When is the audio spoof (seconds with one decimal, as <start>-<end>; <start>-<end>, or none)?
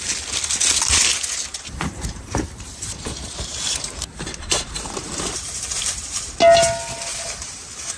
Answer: 1.5-6.3; 7.1-8.0